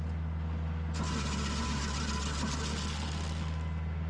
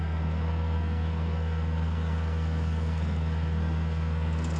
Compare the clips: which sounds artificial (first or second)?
second